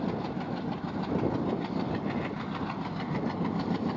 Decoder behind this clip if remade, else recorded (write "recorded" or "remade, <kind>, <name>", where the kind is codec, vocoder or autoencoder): recorded